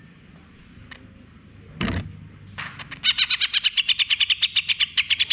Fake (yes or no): no